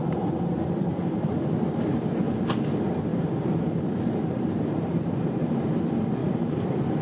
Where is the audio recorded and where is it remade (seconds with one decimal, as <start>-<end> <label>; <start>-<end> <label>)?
0.0-1.1 remade; 1.1-3.1 recorded; 3.1-5.8 remade; 5.8-6.2 recorded; 6.2-7.0 remade